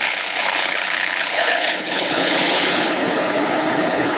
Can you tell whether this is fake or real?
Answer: fake